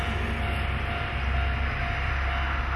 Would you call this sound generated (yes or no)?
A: no